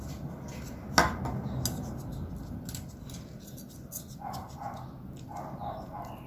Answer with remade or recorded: recorded